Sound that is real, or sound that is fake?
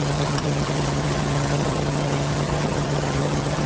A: fake